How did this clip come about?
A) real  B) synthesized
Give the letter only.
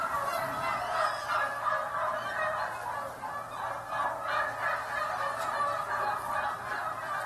A